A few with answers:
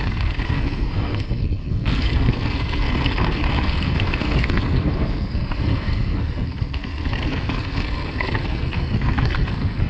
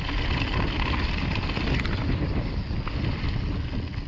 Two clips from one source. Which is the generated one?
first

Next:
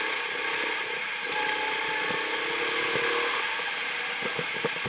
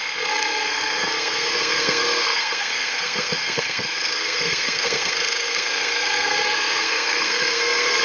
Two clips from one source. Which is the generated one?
second